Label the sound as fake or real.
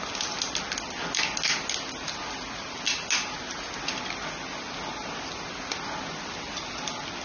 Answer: real